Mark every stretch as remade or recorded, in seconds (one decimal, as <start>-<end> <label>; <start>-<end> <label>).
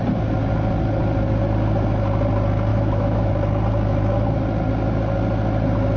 0.0-2.7 recorded; 2.7-3.3 remade; 3.3-6.0 recorded